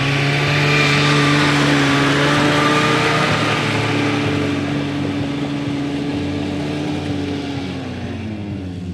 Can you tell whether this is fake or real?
real